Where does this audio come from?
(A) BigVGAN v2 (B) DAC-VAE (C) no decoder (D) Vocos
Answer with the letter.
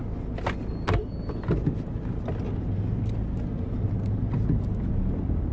C